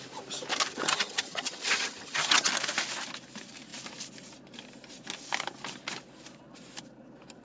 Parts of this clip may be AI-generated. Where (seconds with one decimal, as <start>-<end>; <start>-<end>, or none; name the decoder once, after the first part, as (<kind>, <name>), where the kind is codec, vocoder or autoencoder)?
0.7-2.5 (vocoder, HiFi-GAN)